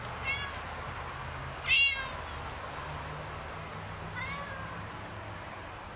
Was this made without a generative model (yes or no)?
yes